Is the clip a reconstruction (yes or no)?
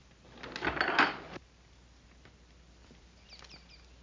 no